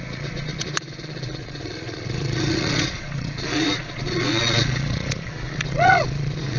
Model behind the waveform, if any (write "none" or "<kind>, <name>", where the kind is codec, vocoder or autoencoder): vocoder, Vocos